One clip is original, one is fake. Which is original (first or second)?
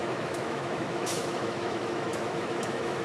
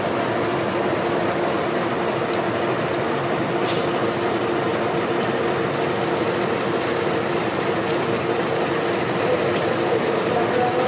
second